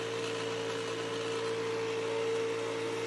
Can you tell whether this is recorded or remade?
recorded